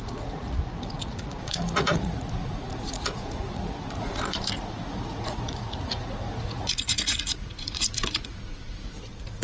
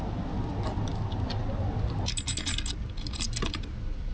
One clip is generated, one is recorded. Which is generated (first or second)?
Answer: first